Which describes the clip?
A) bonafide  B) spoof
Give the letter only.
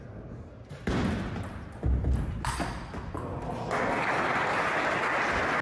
A